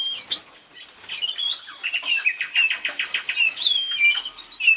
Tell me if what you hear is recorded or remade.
recorded